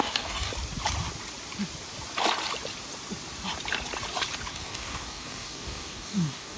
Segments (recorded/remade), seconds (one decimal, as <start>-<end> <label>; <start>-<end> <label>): 0.0-0.5 remade; 0.5-4.5 recorded; 4.5-6.6 remade